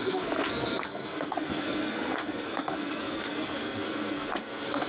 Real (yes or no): no